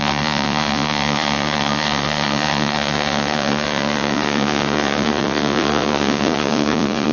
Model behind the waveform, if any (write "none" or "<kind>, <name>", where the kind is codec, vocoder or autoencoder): vocoder, Vocos